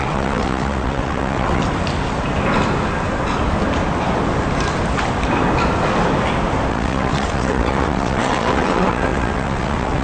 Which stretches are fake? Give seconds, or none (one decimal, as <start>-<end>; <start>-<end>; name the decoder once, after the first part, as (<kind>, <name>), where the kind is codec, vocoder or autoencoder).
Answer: 0.0-1.6 (vocoder, WaveNeXt); 6.7-10.0